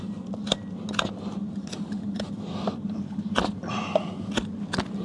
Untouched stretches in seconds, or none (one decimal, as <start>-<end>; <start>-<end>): 0.0-5.0